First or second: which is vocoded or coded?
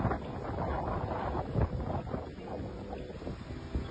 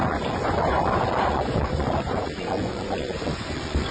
second